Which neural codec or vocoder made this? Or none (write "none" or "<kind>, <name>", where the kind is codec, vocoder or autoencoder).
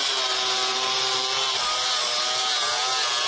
none